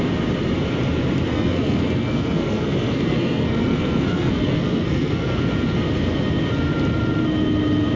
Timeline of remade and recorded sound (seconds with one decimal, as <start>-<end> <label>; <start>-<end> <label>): 0.0-1.3 recorded; 1.3-5.4 remade; 5.4-8.0 recorded